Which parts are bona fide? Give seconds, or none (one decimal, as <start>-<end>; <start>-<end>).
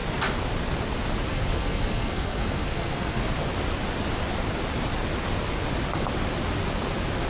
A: 0.0-1.3; 3.2-7.3